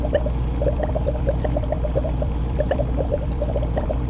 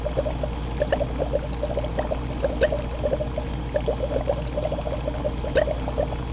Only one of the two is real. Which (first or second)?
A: second